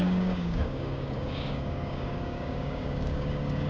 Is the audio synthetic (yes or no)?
yes